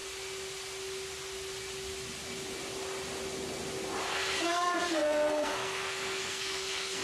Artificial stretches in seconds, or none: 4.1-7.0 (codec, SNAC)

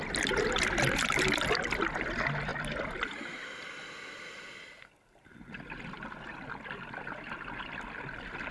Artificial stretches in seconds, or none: none